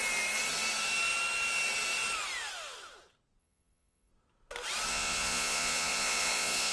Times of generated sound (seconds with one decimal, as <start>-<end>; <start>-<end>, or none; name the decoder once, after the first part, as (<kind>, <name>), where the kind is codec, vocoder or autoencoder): 3.4-4.1 (vocoder, Vocos); 4.9-6.7